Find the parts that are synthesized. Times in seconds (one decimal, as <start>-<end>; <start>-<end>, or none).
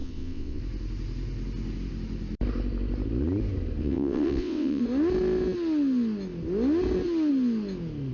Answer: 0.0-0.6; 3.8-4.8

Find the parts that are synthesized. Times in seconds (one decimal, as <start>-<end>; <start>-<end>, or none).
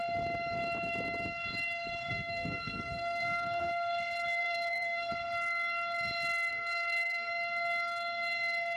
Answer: 2.1-3.7; 4.4-5.1; 6.5-7.3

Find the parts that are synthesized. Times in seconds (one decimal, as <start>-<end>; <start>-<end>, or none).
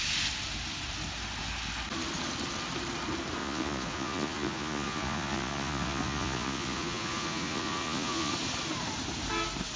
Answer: 3.4-8.3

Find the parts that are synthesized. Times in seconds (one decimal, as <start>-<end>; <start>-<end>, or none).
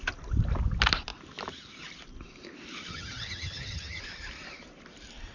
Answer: 2.9-4.0